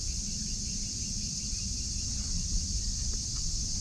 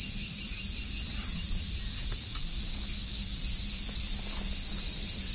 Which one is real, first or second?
second